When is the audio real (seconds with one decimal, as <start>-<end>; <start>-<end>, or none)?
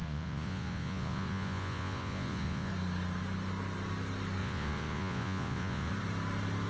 2.7-4.4; 5.9-6.7